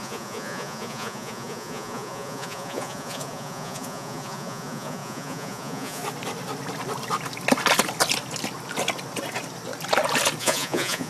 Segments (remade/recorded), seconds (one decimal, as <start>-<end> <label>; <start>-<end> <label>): 0.0-6.0 remade; 6.0-10.4 recorded; 10.4-11.1 remade